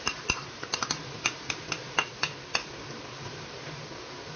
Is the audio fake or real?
real